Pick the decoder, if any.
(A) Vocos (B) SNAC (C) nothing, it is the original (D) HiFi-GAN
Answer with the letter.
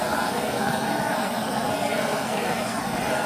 B